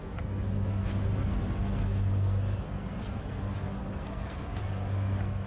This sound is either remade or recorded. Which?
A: remade